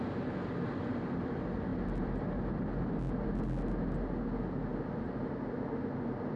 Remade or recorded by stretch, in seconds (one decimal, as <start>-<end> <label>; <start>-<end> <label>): 0.0-6.4 recorded